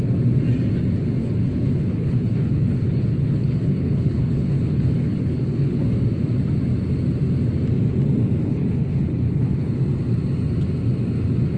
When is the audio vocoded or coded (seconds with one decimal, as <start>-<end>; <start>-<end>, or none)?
1.2-5.8; 8.4-9.8